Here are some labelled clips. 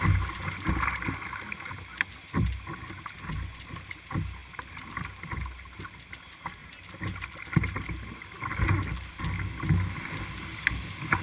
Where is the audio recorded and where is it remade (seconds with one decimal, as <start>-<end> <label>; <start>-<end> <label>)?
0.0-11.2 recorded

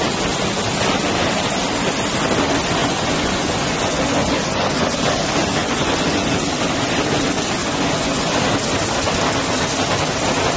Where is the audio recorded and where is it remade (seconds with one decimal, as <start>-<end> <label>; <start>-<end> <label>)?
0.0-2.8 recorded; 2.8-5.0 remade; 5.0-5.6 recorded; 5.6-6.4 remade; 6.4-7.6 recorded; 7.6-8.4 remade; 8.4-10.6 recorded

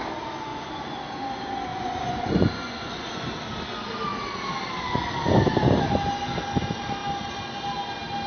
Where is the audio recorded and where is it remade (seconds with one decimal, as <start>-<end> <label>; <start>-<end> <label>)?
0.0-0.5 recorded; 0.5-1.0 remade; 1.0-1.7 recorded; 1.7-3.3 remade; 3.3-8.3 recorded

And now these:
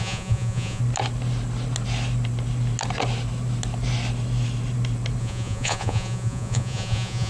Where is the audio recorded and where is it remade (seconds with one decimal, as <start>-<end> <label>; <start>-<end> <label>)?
0.0-0.8 remade; 0.8-5.2 recorded; 5.2-7.3 remade